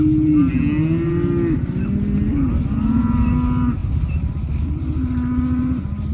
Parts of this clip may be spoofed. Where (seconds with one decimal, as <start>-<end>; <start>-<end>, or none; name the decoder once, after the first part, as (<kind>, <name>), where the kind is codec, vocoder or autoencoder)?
none